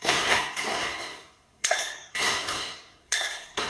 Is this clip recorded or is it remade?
remade